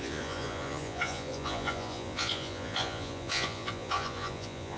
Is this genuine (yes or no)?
no